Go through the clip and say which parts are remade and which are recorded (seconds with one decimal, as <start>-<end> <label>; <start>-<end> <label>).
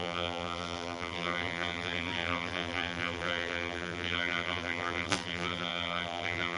0.0-6.6 remade